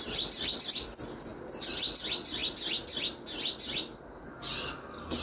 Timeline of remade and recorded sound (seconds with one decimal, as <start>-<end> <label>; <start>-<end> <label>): 0.0-5.2 recorded